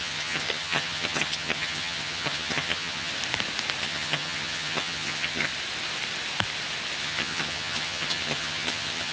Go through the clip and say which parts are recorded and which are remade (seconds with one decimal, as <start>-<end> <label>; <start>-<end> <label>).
0.0-3.1 remade; 3.1-3.8 recorded; 3.8-5.5 remade; 5.5-7.0 recorded; 7.0-9.1 remade